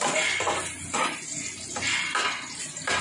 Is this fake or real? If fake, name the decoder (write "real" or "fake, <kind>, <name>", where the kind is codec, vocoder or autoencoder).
real